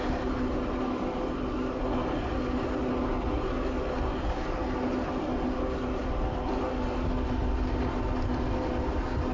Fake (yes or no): no